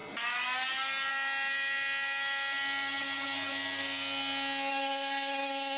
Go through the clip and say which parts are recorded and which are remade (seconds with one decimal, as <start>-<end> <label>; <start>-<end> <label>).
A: 0.0-4.7 recorded; 4.7-5.8 remade